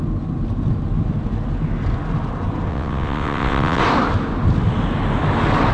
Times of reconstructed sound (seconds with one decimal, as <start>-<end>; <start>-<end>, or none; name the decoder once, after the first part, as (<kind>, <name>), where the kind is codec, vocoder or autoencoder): 2.7-3.8 (vocoder, WaveNeXt)